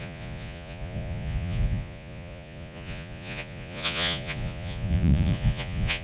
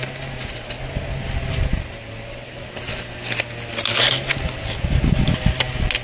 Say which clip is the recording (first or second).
second